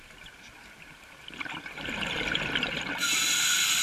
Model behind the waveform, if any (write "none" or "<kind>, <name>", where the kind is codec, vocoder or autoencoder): none